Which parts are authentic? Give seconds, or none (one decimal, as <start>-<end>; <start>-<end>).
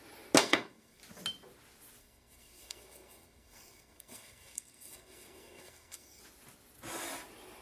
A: 0.0-0.4; 1.0-2.0; 6.2-7.6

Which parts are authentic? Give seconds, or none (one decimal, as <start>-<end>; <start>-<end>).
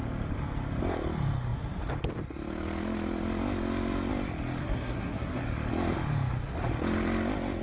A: 0.0-4.6; 5.4-7.6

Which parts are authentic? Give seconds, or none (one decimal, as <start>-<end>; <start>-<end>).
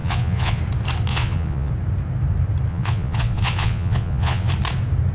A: 0.6-1.1; 1.7-2.7; 4.5-5.1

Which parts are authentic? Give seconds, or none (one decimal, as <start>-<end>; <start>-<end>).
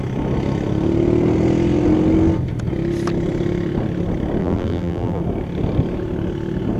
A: 0.0-4.4; 5.2-6.8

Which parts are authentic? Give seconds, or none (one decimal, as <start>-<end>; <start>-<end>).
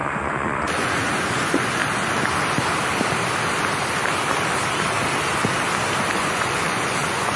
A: 1.8-6.2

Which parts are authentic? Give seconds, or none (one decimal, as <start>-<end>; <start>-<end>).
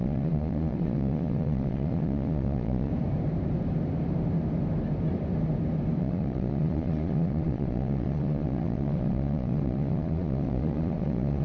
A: 2.9-6.0